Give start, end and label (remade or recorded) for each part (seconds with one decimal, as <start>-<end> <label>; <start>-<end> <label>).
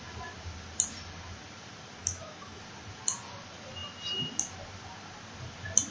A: 0.0-2.0 recorded; 2.0-2.6 remade; 2.6-5.9 recorded